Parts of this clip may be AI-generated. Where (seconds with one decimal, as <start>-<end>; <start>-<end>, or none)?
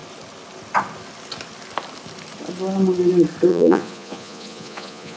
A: 3.5-5.2